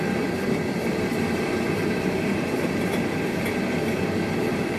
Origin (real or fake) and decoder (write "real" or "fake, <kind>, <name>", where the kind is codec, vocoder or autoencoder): fake, vocoder, BigVGAN v2